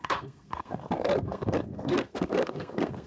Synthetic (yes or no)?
yes